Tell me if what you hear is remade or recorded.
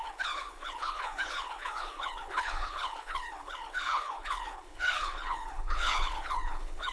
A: remade